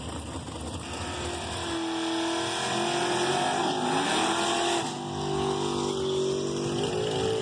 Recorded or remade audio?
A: recorded